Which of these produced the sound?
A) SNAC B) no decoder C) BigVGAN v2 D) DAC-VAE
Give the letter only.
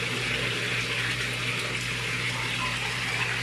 B